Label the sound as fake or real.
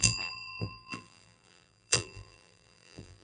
fake